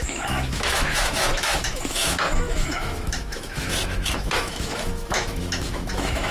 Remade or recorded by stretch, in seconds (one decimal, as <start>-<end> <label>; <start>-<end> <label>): 0.0-6.3 remade